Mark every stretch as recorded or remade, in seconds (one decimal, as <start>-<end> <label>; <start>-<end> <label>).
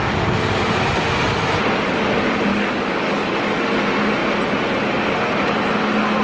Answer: 0.0-2.5 recorded; 2.5-3.7 remade; 3.7-6.2 recorded